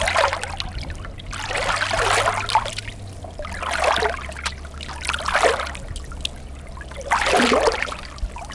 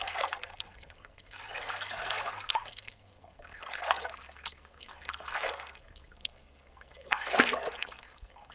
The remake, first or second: second